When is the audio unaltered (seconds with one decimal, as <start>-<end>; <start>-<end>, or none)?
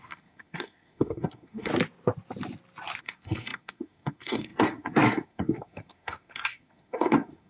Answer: 1.7-3.0